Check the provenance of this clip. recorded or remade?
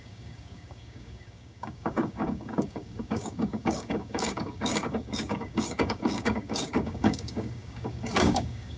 remade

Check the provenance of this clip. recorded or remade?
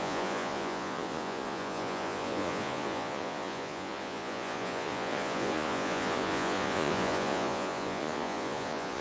remade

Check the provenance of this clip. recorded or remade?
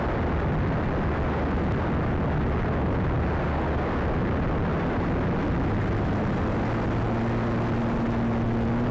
recorded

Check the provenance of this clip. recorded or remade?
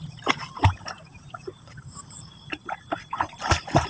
remade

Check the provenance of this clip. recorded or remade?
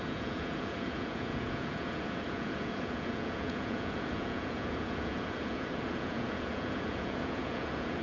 remade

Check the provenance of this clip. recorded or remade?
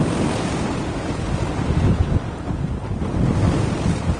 recorded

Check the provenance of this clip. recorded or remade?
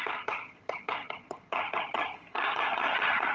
remade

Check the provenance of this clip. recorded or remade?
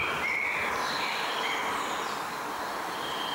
recorded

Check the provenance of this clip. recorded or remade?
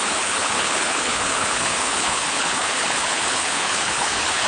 remade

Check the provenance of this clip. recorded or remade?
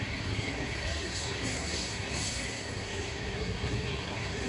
remade